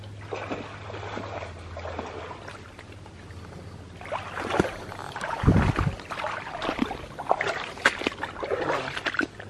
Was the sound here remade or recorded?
recorded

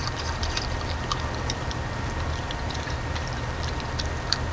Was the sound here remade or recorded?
remade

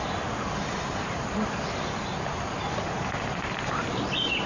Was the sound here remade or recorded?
remade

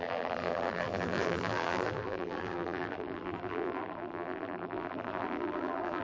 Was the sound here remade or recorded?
remade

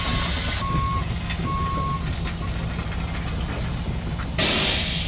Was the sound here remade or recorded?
recorded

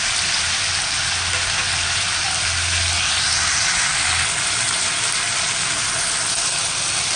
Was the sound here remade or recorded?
recorded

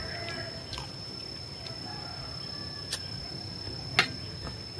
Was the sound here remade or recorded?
recorded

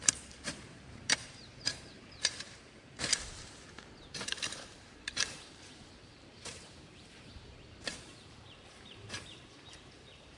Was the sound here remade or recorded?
remade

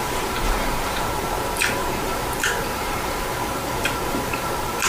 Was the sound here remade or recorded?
remade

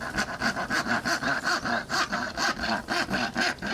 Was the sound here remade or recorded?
remade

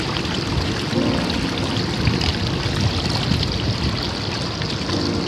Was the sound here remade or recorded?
recorded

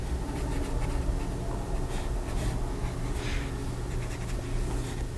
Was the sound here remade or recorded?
recorded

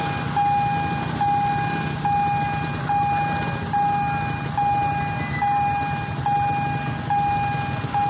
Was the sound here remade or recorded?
recorded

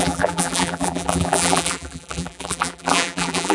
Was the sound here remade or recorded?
remade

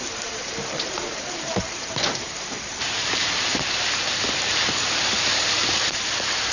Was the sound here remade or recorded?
remade